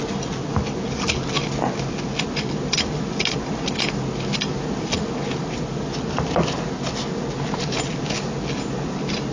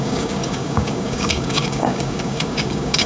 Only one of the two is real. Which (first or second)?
first